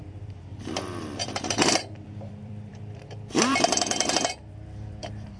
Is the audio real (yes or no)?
no